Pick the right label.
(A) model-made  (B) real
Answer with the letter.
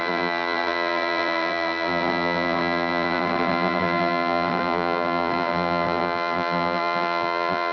A